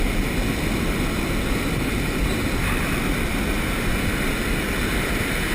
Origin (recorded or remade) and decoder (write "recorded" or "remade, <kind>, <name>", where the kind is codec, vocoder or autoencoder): recorded